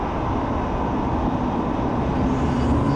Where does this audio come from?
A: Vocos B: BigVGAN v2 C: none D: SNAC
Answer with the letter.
C